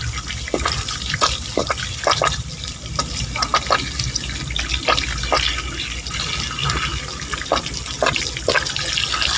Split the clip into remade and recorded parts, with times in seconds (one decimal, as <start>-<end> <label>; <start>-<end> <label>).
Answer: 0.0-9.4 recorded